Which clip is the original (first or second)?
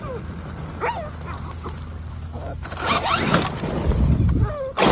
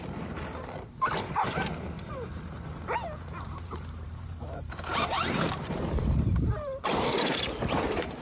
first